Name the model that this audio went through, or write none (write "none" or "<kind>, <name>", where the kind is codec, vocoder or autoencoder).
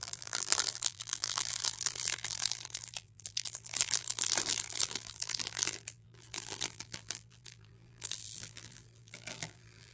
vocoder, BigVGAN v2